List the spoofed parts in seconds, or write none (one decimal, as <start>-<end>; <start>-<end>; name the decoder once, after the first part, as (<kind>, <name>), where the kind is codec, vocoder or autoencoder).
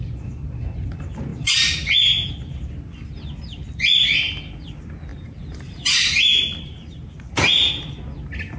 5.1-7.7 (vocoder, BigVGAN v2)